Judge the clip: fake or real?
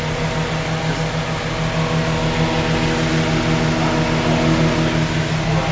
real